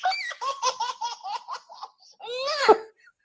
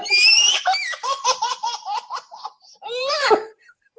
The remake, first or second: second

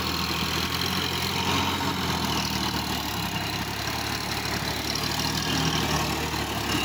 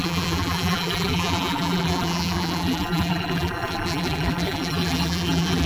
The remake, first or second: second